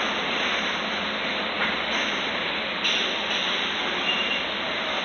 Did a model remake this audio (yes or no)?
yes